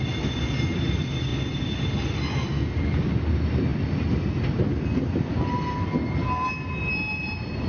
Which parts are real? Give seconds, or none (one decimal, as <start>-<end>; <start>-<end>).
0.0-7.7